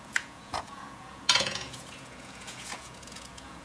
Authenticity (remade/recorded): remade